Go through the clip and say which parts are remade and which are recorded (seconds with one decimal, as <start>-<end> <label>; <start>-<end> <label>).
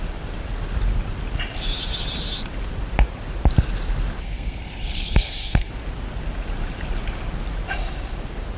0.0-4.2 recorded; 4.2-5.7 remade; 5.7-8.6 recorded